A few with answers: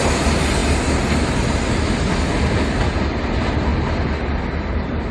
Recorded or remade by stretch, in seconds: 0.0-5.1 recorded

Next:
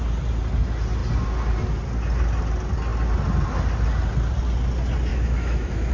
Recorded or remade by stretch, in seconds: 0.0-5.1 recorded; 5.1-5.9 remade

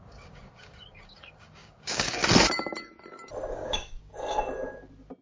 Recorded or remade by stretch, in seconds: 0.0-2.2 remade; 2.2-3.5 recorded; 3.5-4.1 remade; 4.1-5.2 recorded

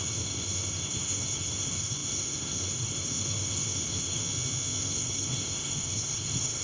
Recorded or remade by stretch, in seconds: 0.0-4.2 remade; 4.2-4.8 recorded; 4.8-6.6 remade

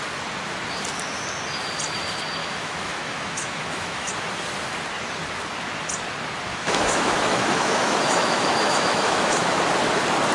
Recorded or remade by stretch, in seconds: 0.0-2.4 recorded; 2.4-4.1 remade; 4.1-6.5 recorded; 6.5-9.6 remade; 9.6-10.3 recorded

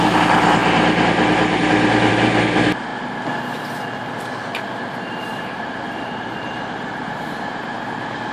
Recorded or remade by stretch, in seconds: 0.0-5.3 recorded; 5.3-7.7 remade; 7.7-8.3 recorded

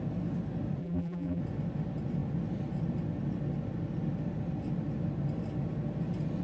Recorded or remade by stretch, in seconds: 0.0-0.8 recorded; 0.8-1.4 remade; 1.4-6.4 recorded